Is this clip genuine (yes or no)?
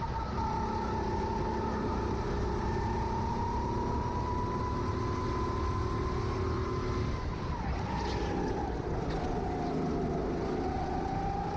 yes